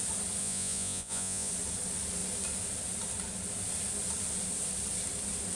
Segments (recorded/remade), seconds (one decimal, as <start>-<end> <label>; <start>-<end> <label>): 0.0-0.4 recorded; 0.4-1.5 remade; 1.5-5.6 recorded